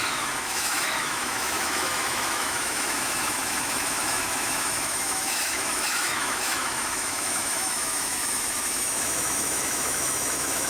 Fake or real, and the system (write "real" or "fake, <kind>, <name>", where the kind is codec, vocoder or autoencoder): fake, autoencoder, DAC-VAE